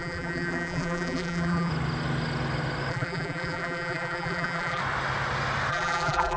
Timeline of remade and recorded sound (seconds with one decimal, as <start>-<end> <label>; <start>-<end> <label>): 0.0-1.7 remade; 1.7-2.9 recorded; 2.9-4.8 remade; 4.8-5.7 recorded; 5.7-6.4 remade